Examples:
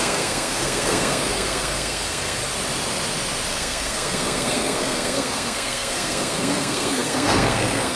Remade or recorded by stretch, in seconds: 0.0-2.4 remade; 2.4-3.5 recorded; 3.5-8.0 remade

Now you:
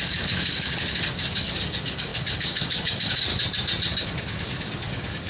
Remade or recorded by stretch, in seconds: 0.0-3.3 remade; 3.3-4.0 recorded; 4.0-5.3 remade

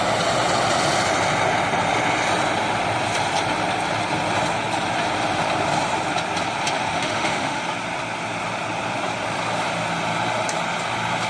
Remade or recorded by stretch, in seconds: 0.0-6.9 recorded; 6.9-7.6 remade; 7.6-11.3 recorded

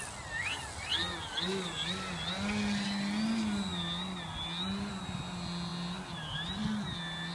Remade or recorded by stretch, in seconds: 0.0-7.3 recorded